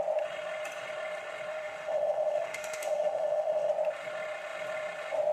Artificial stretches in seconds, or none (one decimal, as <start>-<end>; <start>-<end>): 1.5-3.7